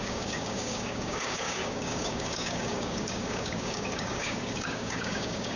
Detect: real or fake fake